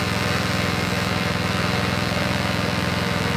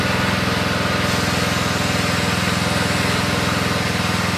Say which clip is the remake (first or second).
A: first